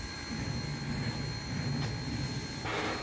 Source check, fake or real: real